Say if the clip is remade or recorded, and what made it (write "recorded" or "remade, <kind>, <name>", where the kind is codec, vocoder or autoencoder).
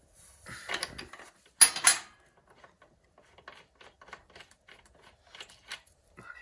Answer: recorded